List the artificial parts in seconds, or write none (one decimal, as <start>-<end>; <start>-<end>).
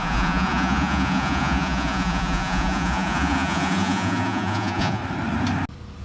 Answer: 0.0-5.0